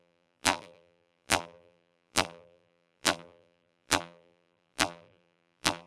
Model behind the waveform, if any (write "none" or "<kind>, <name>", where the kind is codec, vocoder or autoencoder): vocoder, BigVGAN v2